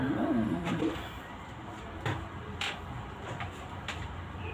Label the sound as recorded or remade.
remade